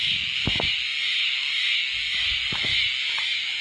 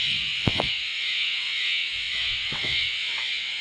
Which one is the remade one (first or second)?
second